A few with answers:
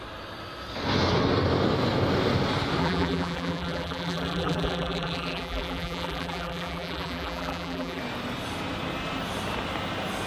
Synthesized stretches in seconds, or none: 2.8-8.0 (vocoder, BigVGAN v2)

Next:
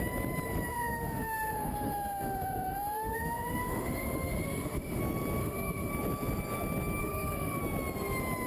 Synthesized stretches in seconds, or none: 0.7-5.0 (autoencoder, DAC-VAE); 5.4-5.9; 7.0-7.6

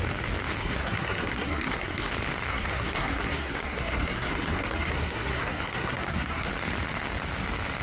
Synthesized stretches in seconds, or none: 0.6-2.1 (codec, SNAC); 2.5-6.5

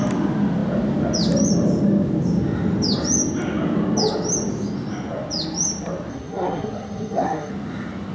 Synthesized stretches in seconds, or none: 6.1-7.5 (codec, SNAC)

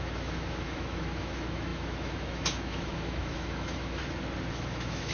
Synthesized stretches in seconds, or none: 0.0-4.0 (autoencoder, DAC-VAE); 4.5-5.1

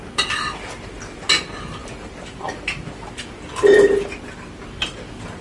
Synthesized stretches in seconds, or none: 1.8-3.1 (vocoder, BigVGAN v2)

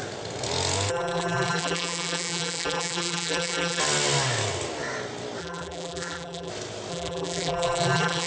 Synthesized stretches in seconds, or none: 0.9-3.8 (vocoder, BigVGAN v2); 5.4-6.5; 6.9-8.3

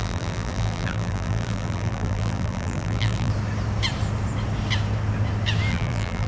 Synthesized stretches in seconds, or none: 0.0-3.3 (vocoder, BigVGAN v2); 5.7-6.3